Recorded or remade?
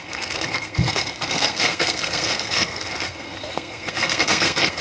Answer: remade